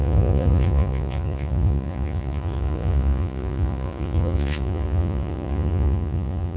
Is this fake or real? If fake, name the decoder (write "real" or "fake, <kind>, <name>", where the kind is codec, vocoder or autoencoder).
fake, vocoder, Vocos